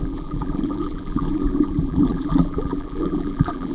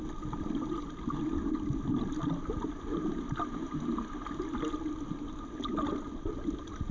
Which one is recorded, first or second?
second